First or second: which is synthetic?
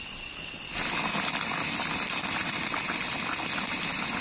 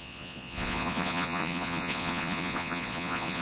second